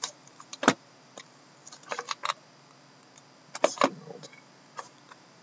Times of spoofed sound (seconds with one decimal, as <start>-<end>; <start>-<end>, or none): 0.0-1.6; 4.8-5.4